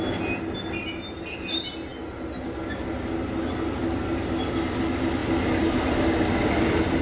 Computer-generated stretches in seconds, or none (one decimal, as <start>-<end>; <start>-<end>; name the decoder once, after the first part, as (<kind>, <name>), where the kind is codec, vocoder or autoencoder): none